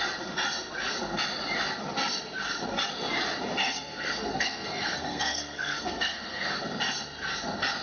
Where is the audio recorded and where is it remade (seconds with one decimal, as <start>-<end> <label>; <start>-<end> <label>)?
0.0-3.6 recorded; 3.6-6.6 remade; 6.6-7.8 recorded

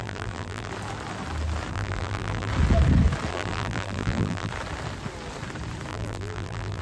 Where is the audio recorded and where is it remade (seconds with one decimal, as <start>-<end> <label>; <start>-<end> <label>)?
0.0-0.7 remade; 0.7-1.7 recorded; 1.7-2.5 remade; 2.5-3.3 recorded; 3.3-4.5 remade; 4.5-5.9 recorded; 5.9-6.8 remade

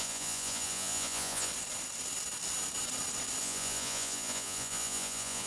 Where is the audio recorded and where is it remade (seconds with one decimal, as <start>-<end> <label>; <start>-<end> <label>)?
0.0-1.5 remade; 1.5-3.4 recorded; 3.4-5.5 remade